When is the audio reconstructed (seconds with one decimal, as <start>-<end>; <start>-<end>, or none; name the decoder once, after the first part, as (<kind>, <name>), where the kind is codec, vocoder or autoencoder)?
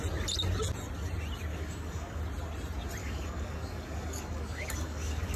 1.5-2.2 (codec, DAC); 3.0-5.4